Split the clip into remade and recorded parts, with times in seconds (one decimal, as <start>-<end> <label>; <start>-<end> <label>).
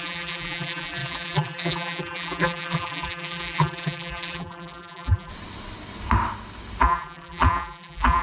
0.0-5.3 remade; 5.3-6.8 recorded; 6.8-8.2 remade